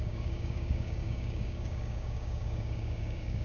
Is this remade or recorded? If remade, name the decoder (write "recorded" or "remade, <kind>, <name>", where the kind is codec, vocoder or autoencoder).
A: remade, codec, DAC